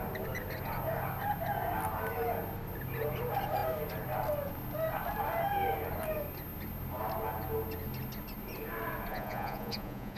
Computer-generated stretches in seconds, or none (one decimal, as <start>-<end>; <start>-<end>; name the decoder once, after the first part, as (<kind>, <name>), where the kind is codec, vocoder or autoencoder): 9.1-10.2 (vocoder, Vocos)